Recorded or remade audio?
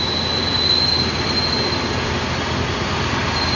recorded